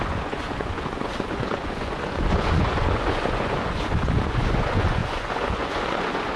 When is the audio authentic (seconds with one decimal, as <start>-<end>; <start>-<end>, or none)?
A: none